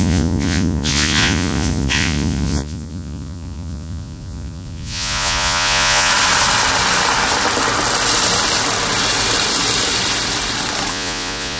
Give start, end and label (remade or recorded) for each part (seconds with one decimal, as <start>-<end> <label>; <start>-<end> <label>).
0.0-6.1 remade; 6.1-10.9 recorded; 10.9-11.6 remade